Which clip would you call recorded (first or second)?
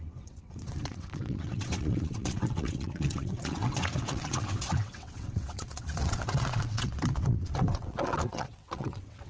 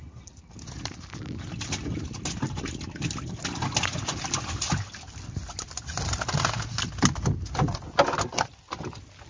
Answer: second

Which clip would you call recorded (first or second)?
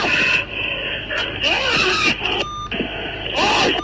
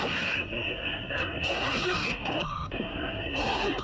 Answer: first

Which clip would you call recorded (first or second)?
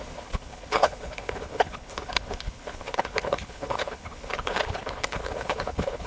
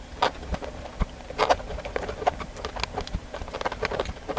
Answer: second